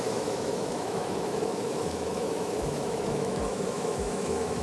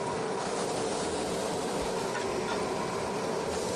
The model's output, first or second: first